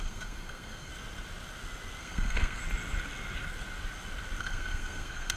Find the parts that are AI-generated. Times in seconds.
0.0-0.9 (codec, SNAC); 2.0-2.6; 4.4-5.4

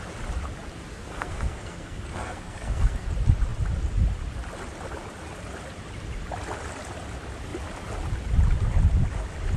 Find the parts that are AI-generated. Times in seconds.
0.9-3.1 (codec, SNAC)